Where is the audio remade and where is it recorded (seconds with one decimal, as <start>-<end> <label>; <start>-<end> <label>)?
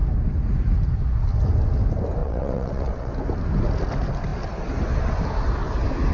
0.0-2.2 recorded; 2.2-3.1 remade; 3.1-6.1 recorded